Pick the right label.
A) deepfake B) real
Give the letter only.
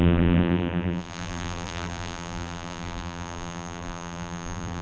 A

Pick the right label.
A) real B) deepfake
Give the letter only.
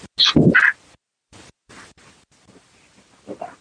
A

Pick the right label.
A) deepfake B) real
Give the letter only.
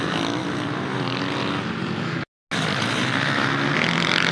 B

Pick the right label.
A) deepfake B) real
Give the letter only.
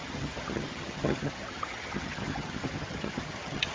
A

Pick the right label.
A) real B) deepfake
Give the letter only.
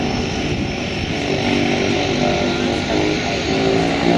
A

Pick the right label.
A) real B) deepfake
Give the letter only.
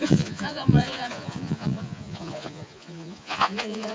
B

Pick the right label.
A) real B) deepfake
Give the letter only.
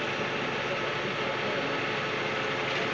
A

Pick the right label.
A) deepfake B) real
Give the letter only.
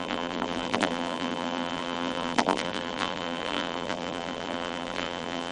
A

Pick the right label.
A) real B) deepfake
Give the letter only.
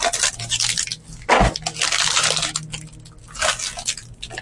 A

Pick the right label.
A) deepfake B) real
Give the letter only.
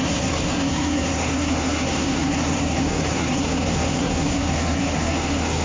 A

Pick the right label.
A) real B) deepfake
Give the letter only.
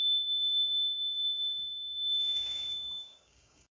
B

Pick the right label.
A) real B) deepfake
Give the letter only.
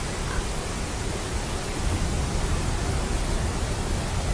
A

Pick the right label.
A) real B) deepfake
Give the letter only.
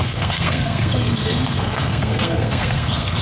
B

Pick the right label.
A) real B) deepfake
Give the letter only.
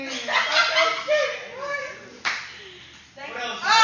A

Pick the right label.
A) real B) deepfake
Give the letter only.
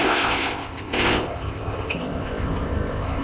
B